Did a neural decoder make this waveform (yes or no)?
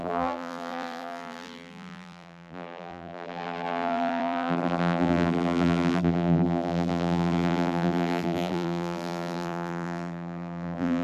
yes